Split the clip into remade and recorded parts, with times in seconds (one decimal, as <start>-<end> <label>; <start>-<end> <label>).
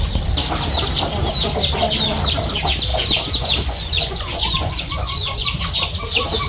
0.0-2.9 recorded; 2.9-5.6 remade; 5.6-6.5 recorded